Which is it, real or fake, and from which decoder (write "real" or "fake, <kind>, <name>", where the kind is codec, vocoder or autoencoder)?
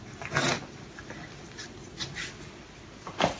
real